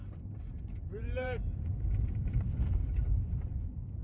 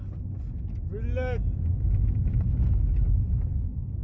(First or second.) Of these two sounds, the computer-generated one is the first